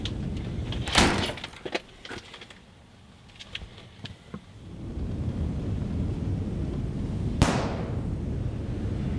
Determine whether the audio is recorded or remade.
recorded